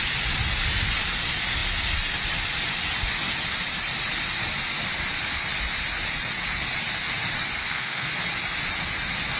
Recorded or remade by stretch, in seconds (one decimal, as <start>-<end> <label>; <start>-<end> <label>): 0.0-7.6 recorded; 7.6-8.1 remade; 8.1-9.4 recorded